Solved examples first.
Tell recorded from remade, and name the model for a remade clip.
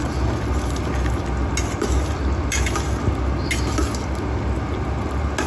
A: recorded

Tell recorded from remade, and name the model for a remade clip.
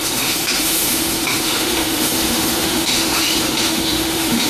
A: remade, autoencoder, DAC-VAE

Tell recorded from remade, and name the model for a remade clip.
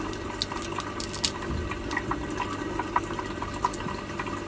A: recorded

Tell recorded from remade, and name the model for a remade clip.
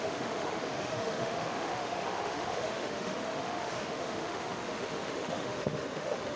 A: remade, autoencoder, DAC-VAE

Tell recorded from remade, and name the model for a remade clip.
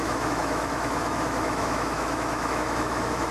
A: remade, autoencoder, DAC-VAE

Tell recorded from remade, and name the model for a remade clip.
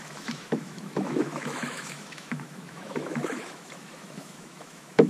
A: remade, autoencoder, DAC-VAE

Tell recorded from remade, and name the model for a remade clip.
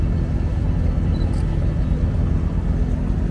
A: recorded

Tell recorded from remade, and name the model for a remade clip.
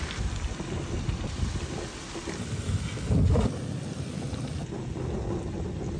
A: recorded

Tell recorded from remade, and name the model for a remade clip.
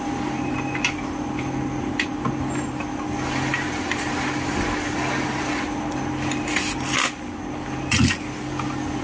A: recorded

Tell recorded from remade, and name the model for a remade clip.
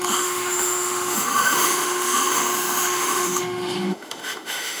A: remade, autoencoder, DAC-VAE